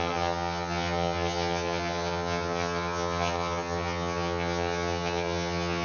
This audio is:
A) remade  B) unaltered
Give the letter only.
A